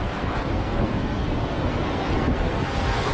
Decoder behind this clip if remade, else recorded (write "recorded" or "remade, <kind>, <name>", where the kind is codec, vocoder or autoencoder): remade, codec, SNAC